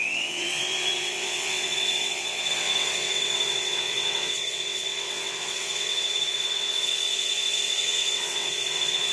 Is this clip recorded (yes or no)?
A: no